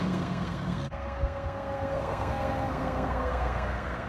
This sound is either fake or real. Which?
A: fake